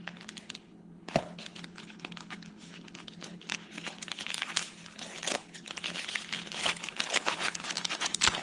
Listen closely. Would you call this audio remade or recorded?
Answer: remade